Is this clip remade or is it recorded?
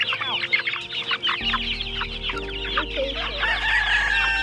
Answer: recorded